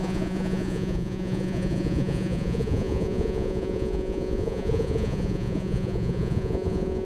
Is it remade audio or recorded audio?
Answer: remade